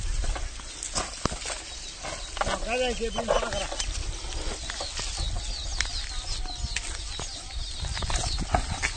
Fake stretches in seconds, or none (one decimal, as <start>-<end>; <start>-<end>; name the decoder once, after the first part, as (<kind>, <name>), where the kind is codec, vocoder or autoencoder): none